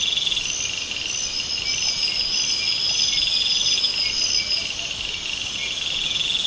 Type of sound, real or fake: real